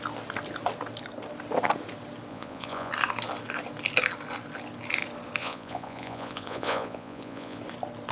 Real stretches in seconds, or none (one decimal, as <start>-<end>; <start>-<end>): 0.0-2.3; 2.9-5.4; 7.6-8.1